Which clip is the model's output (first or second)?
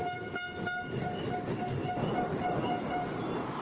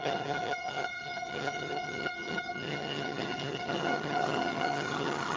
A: second